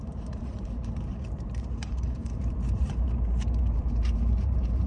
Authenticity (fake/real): fake